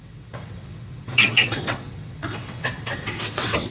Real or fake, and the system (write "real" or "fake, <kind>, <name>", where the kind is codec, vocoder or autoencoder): fake, vocoder, WaveNeXt